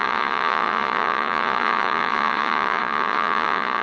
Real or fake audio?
fake